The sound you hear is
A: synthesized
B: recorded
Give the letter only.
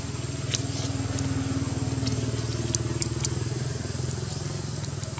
B